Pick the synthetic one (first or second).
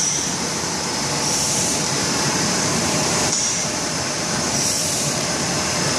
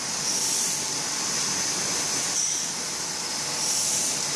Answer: first